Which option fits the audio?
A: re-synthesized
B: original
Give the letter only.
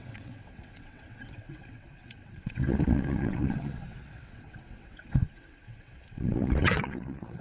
A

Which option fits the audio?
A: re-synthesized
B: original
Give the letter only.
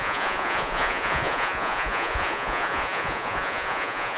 A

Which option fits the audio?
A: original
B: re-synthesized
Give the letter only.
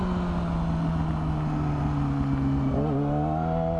A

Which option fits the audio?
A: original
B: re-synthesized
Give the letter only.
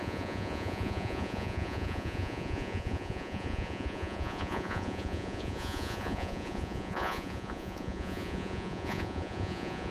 B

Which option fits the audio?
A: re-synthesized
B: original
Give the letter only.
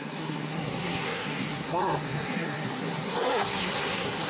A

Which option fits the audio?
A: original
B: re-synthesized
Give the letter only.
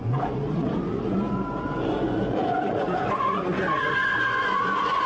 B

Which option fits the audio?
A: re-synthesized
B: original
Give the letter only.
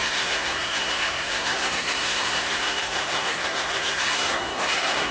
A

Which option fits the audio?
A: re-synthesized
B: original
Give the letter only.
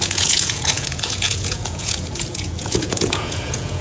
A